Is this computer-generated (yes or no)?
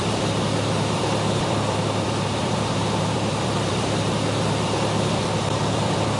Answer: yes